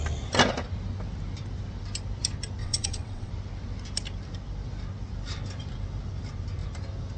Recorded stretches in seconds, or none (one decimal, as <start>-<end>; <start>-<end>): 0.0-2.6; 3.3-7.2